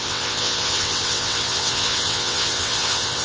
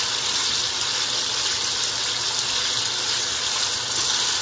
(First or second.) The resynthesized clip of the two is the first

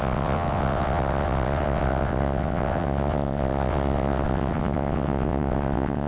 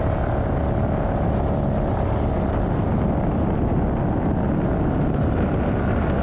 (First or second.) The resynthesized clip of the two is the first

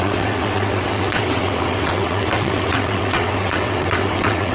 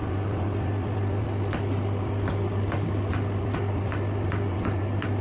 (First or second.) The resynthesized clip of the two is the first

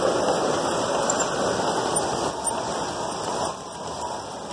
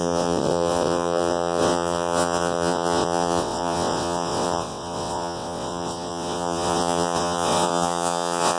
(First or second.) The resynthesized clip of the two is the second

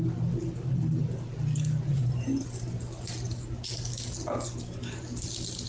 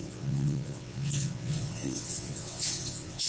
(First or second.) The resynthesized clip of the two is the second